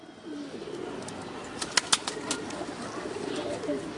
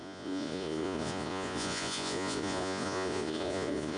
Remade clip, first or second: second